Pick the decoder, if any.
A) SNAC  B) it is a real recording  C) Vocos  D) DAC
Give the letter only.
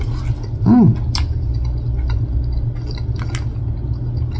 B